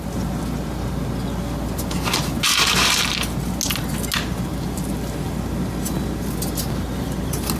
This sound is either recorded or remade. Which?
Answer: recorded